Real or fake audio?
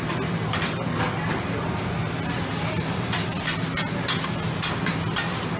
real